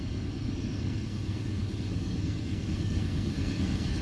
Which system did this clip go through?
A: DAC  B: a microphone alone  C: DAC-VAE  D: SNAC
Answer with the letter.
D